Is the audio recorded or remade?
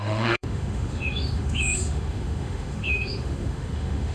remade